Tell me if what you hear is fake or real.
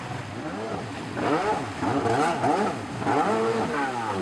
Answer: real